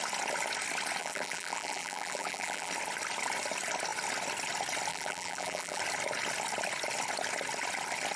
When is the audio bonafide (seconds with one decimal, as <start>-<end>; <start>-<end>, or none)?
0.0-1.0; 2.7-4.9; 5.8-8.2